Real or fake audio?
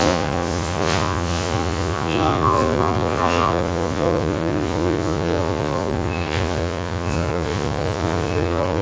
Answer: fake